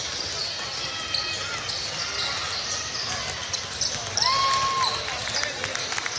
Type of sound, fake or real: real